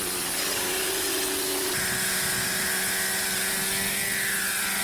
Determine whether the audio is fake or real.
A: real